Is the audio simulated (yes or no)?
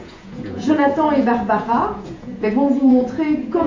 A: yes